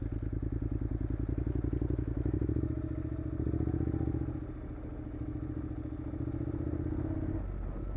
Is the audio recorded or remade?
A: recorded